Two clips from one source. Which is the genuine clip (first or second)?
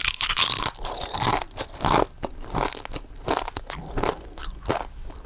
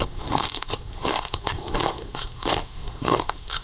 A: first